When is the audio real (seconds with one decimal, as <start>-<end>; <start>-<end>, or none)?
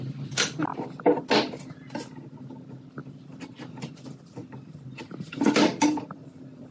0.0-0.7; 1.2-3.0